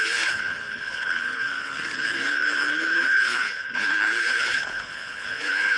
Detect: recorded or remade remade